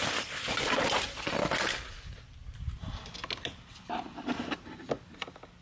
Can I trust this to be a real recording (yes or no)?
yes